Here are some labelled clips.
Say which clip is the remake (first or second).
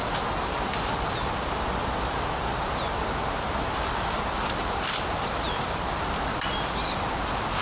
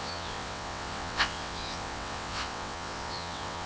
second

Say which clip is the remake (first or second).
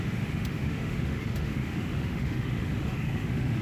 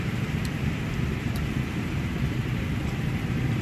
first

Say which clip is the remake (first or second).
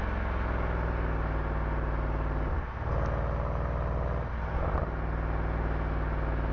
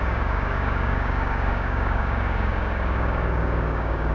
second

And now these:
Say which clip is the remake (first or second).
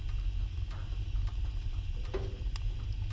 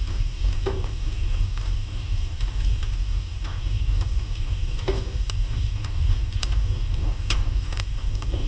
second